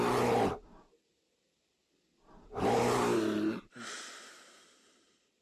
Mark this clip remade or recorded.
recorded